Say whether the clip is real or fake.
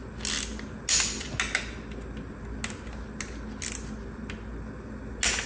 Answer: real